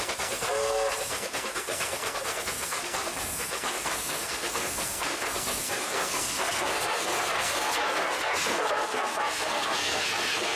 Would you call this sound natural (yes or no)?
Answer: no